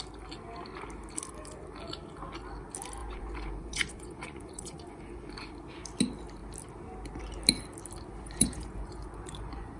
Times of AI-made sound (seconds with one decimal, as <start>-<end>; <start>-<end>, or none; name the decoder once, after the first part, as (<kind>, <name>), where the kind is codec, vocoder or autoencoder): 3.0-5.5 (vocoder, Vocos); 8.1-9.8